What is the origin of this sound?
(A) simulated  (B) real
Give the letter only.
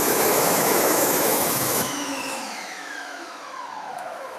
A